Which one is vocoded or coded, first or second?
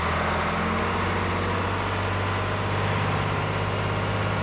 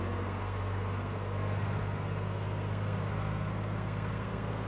second